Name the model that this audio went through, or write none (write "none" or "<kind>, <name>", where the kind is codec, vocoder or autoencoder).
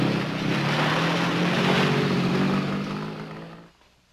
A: none